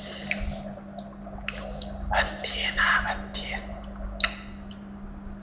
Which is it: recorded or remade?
recorded